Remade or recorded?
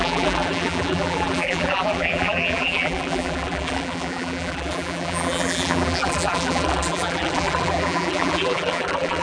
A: remade